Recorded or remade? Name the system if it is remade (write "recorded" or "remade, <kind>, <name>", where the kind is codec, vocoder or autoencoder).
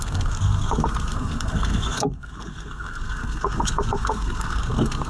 remade, codec, SNAC